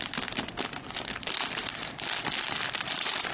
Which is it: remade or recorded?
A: recorded